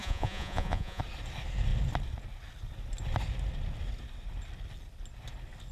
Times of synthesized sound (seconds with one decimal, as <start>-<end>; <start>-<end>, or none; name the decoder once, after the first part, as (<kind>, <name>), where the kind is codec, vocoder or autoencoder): 0.0-1.0 (vocoder, Vocos)